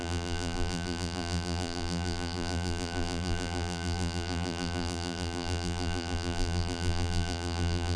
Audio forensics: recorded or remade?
remade